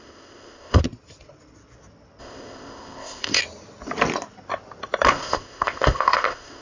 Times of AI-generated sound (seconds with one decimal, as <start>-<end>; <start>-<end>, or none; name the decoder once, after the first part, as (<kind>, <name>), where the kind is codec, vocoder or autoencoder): 0.0-0.8 (codec, ZipCodec); 2.2-3.4; 5.1-6.6